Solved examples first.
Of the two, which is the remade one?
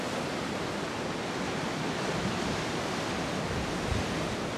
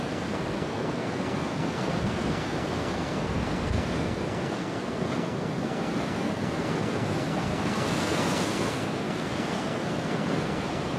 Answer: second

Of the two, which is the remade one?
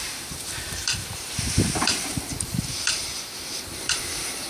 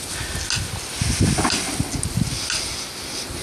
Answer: first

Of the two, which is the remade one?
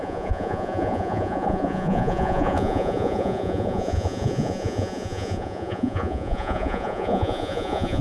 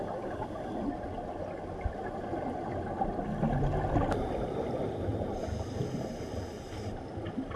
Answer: first